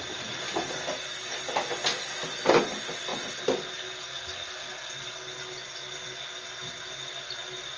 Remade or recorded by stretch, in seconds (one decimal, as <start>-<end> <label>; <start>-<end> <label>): 0.0-7.8 recorded